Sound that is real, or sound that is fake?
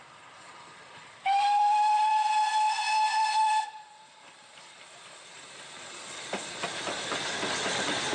fake